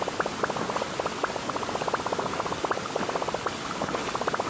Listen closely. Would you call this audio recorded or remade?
recorded